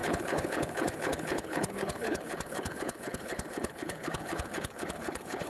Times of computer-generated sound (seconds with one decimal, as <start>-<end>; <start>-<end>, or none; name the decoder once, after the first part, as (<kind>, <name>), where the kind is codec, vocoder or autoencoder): 0.0-5.5 (codec, HILCodec)